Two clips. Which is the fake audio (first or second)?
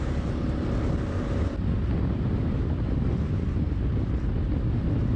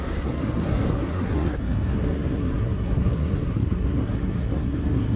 second